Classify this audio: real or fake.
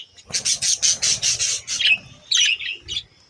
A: real